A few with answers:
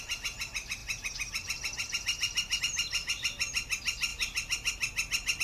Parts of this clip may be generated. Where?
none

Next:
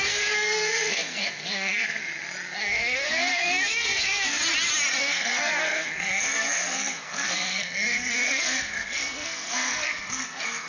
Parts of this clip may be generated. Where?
0.0-2.0 (codec, SNAC); 2.6-4.4; 5.0-10.7

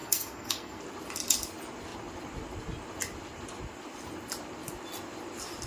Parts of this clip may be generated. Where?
0.0-0.8 (codec, SNAC)

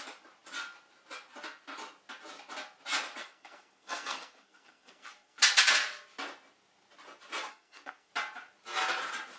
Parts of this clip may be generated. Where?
3.2-5.4 (codec, SNAC); 7.5-8.1

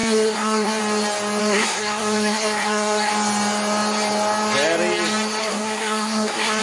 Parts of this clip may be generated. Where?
0.0-0.8 (codec, SNAC); 1.4-3.1; 5.4-6.6